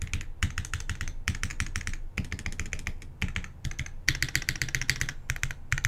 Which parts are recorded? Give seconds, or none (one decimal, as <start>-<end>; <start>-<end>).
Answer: 0.0-5.9